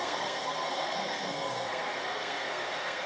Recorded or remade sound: remade